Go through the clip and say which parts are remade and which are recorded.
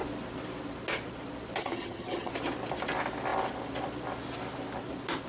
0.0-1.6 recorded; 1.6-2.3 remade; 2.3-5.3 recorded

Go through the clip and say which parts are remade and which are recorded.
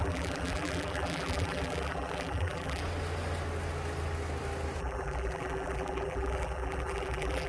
0.0-2.8 remade; 2.8-4.8 recorded; 4.8-7.5 remade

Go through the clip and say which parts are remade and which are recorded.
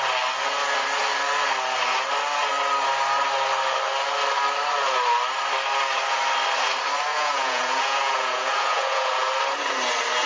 0.0-7.1 recorded; 7.1-9.3 remade; 9.3-10.3 recorded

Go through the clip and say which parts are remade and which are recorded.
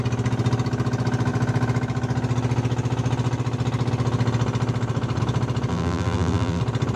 0.0-5.7 recorded; 5.7-6.6 remade; 6.6-7.0 recorded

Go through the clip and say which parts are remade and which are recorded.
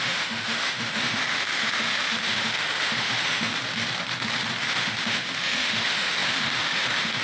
0.0-3.5 remade; 3.5-4.6 recorded; 4.6-7.2 remade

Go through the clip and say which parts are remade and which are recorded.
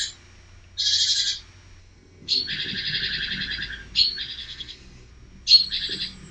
0.0-1.8 recorded; 1.8-2.4 remade; 2.4-4.4 recorded; 4.4-5.1 remade; 5.1-6.3 recorded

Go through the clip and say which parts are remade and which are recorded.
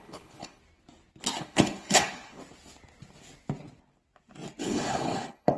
0.0-0.6 remade; 0.6-1.4 recorded; 1.4-2.4 remade; 2.4-4.6 recorded; 4.6-5.6 remade